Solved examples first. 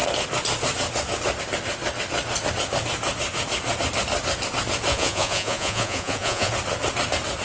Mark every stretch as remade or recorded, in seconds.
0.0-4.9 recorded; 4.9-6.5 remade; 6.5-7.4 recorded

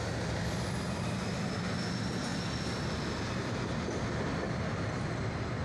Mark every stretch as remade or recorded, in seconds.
0.0-2.3 recorded; 2.3-2.9 remade; 2.9-5.6 recorded

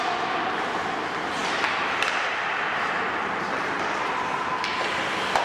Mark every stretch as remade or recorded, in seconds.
0.0-5.4 recorded

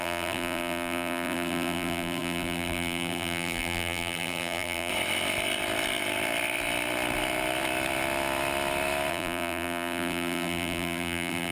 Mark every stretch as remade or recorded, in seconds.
0.0-4.9 remade; 4.9-9.1 recorded; 9.1-11.5 remade

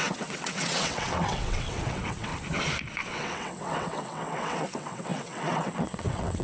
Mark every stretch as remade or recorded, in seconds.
0.0-2.3 remade; 2.3-3.1 recorded; 3.1-6.4 remade

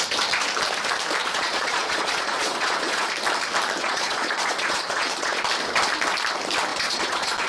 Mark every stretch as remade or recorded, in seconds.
0.0-1.2 recorded; 1.2-3.1 remade; 3.1-3.8 recorded; 3.8-5.4 remade; 5.4-6.7 recorded; 6.7-7.5 remade

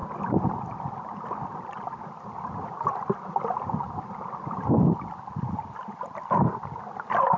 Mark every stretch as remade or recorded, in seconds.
0.0-7.4 recorded

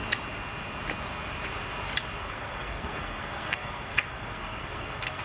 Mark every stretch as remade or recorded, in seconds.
0.0-2.2 recorded; 2.2-5.2 remade